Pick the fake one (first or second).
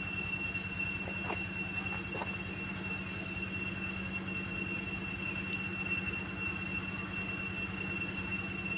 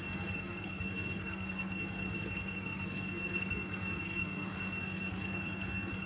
second